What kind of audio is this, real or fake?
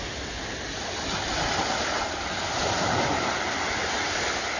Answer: real